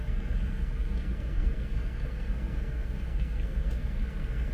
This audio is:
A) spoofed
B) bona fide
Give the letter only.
A